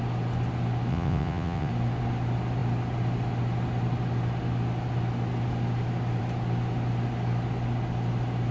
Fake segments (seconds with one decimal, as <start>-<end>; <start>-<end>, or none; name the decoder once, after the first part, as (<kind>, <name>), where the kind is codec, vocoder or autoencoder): 0.9-1.7 (vocoder, WaveNeXt)